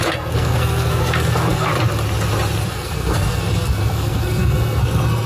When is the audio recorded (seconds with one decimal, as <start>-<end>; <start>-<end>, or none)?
1.7-2.7